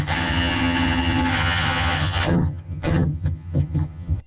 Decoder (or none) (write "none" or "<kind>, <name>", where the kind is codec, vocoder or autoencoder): vocoder, HiFi-GAN